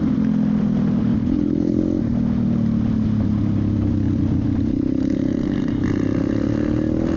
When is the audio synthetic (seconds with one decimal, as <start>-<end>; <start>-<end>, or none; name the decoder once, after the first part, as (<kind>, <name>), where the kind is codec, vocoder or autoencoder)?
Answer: 1.2-1.8 (codec, HILCodec)